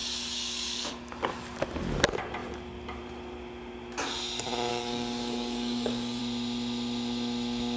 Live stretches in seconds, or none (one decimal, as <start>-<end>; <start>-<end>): 0.9-4.7; 6.2-7.8